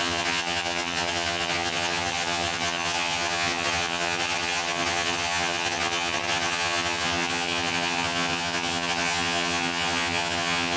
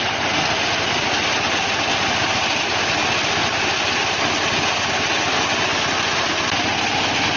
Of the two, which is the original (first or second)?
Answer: second